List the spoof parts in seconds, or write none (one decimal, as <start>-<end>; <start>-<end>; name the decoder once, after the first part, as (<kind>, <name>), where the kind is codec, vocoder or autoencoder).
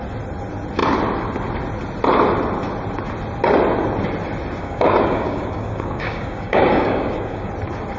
4.6-7.5 (codec, DAC)